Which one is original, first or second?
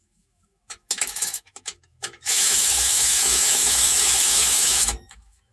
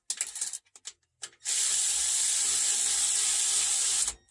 second